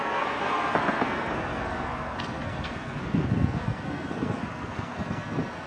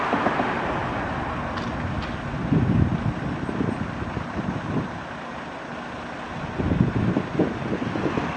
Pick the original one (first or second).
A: second